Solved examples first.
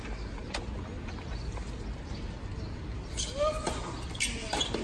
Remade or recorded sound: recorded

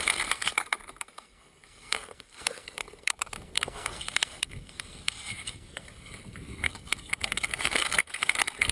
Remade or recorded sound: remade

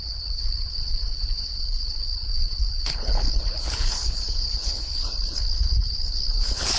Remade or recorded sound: remade